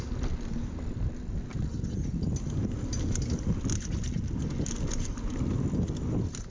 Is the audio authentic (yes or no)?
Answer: yes